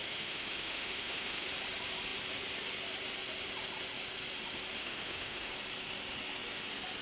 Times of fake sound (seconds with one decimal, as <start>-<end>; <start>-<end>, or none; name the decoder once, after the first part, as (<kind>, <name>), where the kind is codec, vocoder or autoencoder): 0.0-1.5 (autoencoder, DAC-VAE); 4.8-5.5

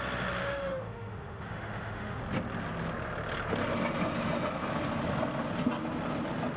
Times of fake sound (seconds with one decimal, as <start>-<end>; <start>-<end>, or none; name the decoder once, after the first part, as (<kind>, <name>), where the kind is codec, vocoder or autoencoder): 0.4-2.2 (autoencoder, DAC-VAE)

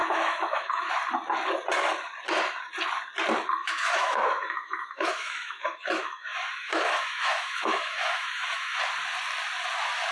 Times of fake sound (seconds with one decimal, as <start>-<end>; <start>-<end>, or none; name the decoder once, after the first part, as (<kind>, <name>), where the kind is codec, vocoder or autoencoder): 0.0-0.9 (autoencoder, DAC-VAE); 3.6-8.8

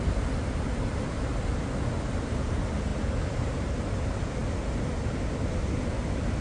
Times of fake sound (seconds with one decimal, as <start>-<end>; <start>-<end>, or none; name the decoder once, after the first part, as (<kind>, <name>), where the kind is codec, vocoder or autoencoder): none

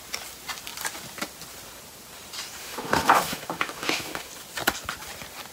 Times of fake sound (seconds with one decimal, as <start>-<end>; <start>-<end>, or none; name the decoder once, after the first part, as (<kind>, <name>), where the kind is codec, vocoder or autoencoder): 2.6-4.3 (autoencoder, DAC-VAE)

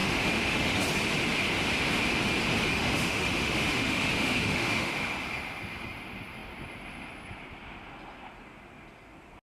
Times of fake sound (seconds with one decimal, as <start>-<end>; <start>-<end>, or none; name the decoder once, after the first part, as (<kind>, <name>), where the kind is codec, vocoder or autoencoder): 0.0-0.8 (autoencoder, DAC-VAE); 2.7-4.9

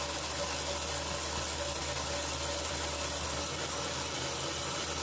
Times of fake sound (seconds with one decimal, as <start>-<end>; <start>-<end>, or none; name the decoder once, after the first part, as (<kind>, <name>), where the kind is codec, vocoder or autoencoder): none